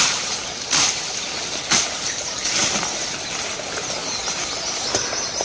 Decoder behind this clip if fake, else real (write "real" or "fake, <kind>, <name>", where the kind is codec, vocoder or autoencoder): real